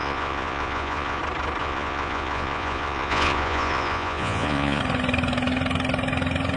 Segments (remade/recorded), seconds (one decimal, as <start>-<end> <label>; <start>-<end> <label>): 0.0-1.2 remade; 1.2-1.6 recorded; 1.6-4.8 remade; 4.8-6.6 recorded

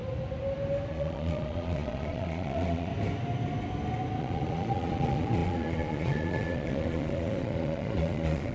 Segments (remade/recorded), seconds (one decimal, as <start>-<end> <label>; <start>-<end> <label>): 0.0-0.9 recorded; 0.9-2.9 remade; 2.9-4.2 recorded; 4.2-8.5 remade

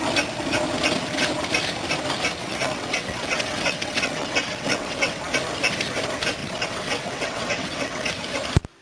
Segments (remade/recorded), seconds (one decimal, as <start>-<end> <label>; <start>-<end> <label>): 0.0-2.4 recorded; 2.4-5.2 remade; 5.2-6.4 recorded; 6.4-8.1 remade; 8.1-8.8 recorded

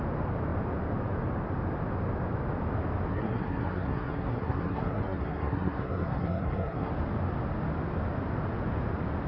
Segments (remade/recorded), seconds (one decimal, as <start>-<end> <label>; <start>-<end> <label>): 0.0-3.1 recorded; 3.1-6.9 remade; 6.9-9.3 recorded

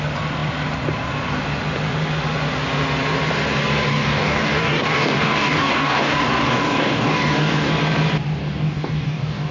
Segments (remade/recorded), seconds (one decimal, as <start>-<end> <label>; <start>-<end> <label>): 0.0-3.9 recorded; 3.9-7.7 remade; 7.7-8.4 recorded; 8.4-9.5 remade

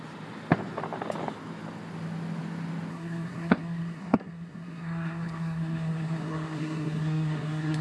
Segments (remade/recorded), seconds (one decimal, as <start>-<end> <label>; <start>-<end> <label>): 0.0-2.9 recorded; 2.9-7.8 remade

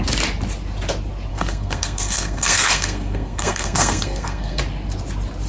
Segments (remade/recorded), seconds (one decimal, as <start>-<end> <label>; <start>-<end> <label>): 0.0-1.3 recorded; 1.3-4.6 remade; 4.6-5.5 recorded

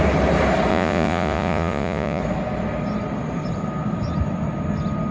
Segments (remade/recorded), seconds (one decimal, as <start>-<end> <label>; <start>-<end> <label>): 0.0-0.7 recorded; 0.7-2.2 remade; 2.2-5.1 recorded